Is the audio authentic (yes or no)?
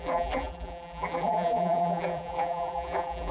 no